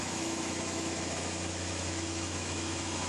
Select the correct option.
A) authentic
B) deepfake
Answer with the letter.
B